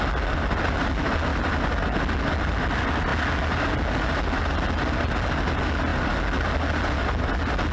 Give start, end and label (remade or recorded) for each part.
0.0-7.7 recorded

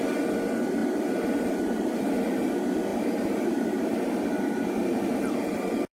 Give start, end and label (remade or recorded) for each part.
0.0-0.8 recorded; 0.8-2.5 remade; 2.5-2.9 recorded; 2.9-4.1 remade; 4.1-5.1 recorded; 5.1-6.0 remade

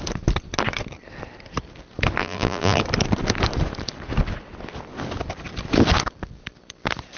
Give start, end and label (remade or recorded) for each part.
0.0-2.2 recorded; 2.2-2.8 remade; 2.8-7.2 recorded

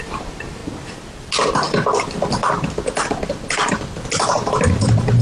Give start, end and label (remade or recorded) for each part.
0.0-0.6 remade; 0.6-3.7 recorded; 3.7-5.2 remade

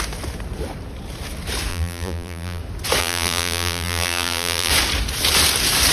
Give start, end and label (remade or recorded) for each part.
0.0-1.7 recorded; 1.7-2.6 remade; 2.6-3.0 recorded; 3.0-4.7 remade; 4.7-5.9 recorded

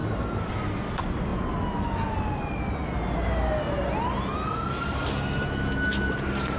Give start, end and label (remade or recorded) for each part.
0.0-0.5 remade; 0.5-6.6 recorded

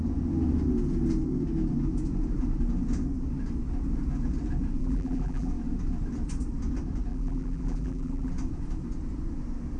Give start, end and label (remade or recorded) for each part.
0.0-4.8 recorded; 4.8-5.5 remade; 5.5-7.1 recorded; 7.1-8.3 remade; 8.3-9.8 recorded

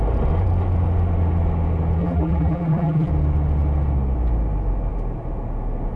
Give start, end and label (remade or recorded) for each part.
0.0-2.0 recorded; 2.0-3.1 remade; 3.1-6.0 recorded